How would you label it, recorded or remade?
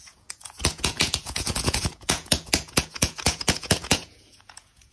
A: remade